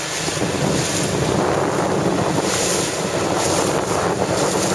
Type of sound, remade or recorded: recorded